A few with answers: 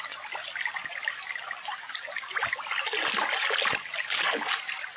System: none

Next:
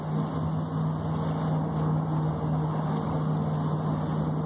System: none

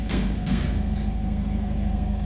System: codec, SNAC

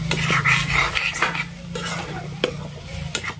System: vocoder, BigVGAN v2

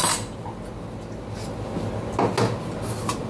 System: none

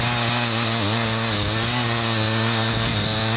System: none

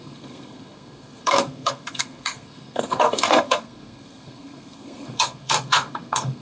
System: codec, SNAC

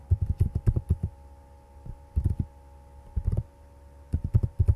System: none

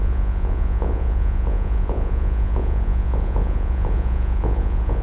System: vocoder, Vocos